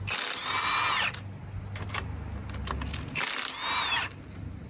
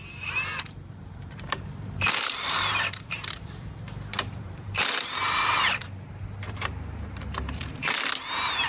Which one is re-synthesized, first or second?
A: second